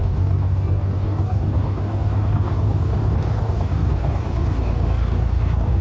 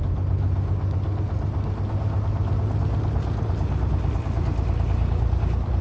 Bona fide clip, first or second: second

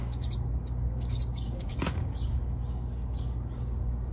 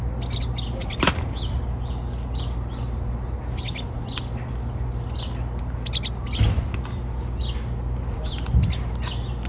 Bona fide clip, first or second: second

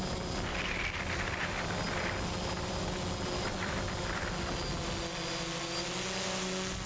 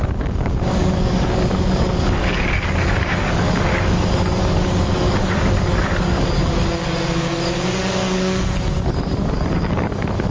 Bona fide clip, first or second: first